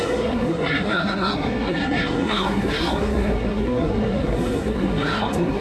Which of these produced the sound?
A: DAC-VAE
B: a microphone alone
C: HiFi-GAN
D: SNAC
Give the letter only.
D